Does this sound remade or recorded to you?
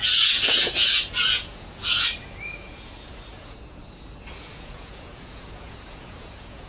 remade